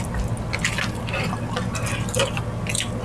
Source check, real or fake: real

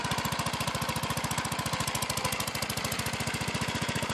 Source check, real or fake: real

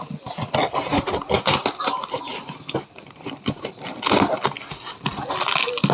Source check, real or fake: real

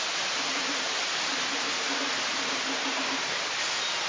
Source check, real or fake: real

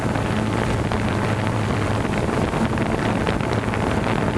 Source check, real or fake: real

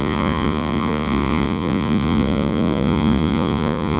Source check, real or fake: fake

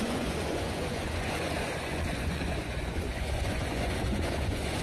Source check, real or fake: fake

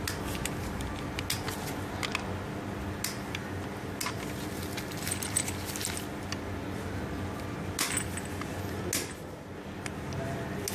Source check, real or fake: real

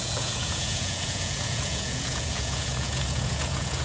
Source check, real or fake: fake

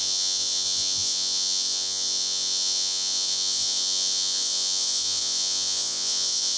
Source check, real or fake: fake